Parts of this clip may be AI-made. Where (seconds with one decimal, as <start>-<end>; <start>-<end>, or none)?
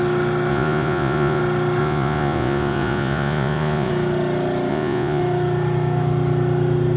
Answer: 0.5-1.4; 1.8-3.9; 4.7-5.2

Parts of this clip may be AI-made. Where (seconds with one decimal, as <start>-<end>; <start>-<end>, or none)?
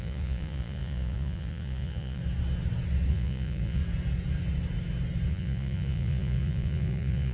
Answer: 0.0-2.2; 3.1-3.8; 5.3-7.3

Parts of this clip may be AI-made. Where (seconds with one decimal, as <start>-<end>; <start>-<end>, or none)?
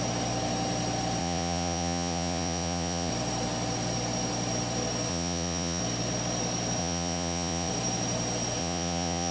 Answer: 1.2-3.1; 5.1-5.8; 6.8-7.7; 8.6-9.3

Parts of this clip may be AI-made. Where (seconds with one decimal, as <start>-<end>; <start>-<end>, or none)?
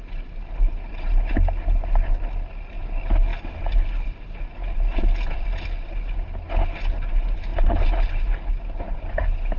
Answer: none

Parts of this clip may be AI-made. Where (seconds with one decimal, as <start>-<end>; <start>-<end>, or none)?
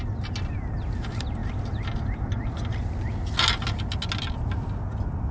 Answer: none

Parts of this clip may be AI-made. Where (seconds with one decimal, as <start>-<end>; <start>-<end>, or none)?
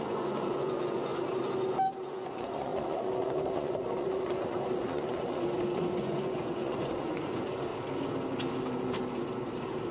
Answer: 0.0-1.1; 2.0-7.7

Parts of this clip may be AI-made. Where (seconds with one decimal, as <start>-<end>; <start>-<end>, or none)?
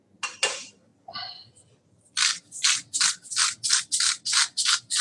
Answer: none